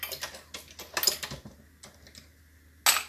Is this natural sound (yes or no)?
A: yes